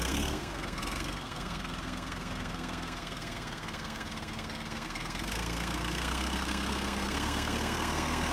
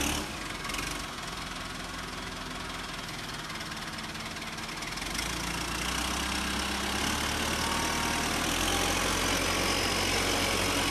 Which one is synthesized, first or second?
first